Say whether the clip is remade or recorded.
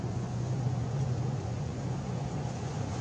remade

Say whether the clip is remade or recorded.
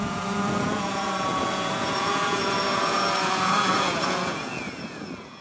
remade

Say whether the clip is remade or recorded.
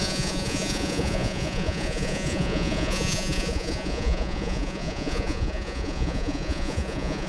remade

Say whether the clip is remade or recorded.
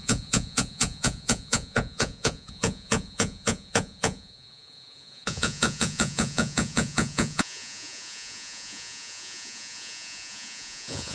remade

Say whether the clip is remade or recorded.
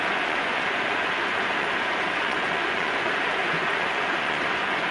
remade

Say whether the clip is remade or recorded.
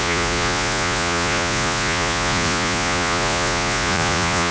remade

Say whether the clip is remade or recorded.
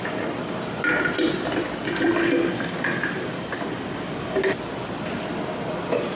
recorded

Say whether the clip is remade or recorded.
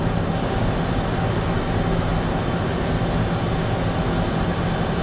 recorded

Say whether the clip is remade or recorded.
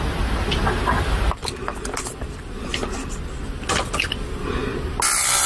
recorded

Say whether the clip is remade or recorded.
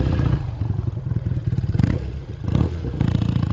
remade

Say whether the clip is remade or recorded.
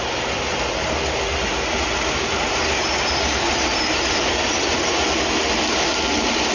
recorded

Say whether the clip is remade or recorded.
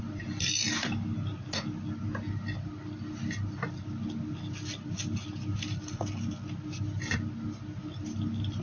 recorded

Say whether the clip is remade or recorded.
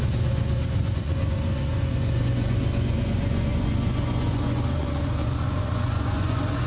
remade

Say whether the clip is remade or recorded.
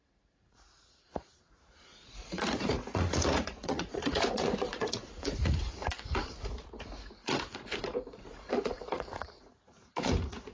remade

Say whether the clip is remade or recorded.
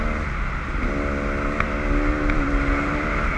recorded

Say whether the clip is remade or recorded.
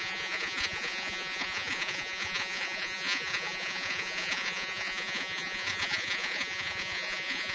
remade